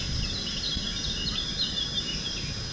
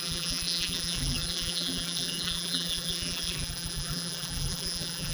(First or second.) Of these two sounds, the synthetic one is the second